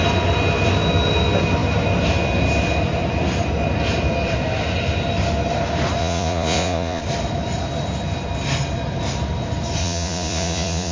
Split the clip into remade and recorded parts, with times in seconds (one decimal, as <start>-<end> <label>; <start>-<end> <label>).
0.0-6.0 recorded; 6.0-7.0 remade; 7.0-9.8 recorded; 9.8-10.9 remade